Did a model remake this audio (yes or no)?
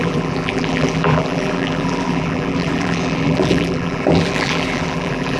yes